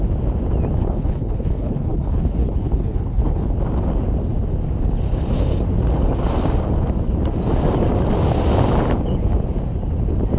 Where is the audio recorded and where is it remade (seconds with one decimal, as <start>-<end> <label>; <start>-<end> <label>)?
0.0-0.8 recorded; 0.8-3.5 remade; 3.5-10.4 recorded